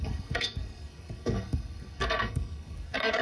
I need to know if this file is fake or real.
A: fake